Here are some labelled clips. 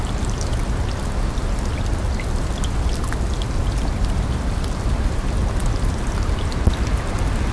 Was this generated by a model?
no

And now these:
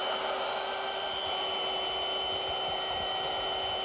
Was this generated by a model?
no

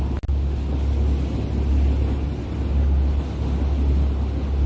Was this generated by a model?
no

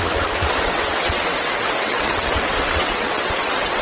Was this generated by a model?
yes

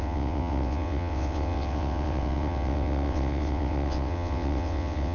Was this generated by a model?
yes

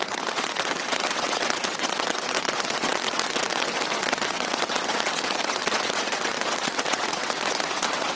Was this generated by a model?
yes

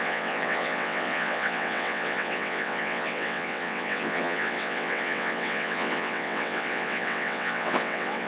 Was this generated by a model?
yes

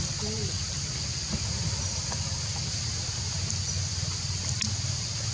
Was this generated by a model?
no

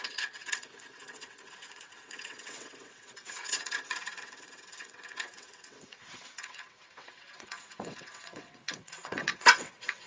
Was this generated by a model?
yes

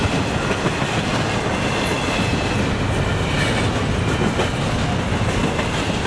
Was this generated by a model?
no